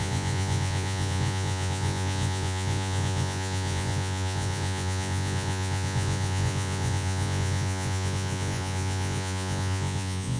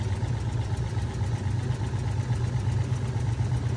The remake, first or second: first